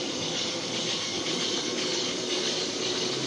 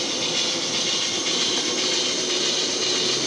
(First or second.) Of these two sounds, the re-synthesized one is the first